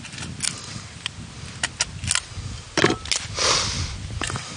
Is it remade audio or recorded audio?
recorded